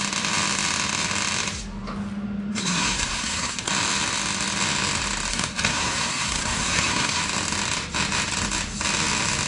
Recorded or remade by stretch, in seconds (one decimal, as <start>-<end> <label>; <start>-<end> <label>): 0.0-2.5 recorded; 2.5-3.7 remade; 3.7-5.3 recorded; 5.3-7.2 remade; 7.2-9.5 recorded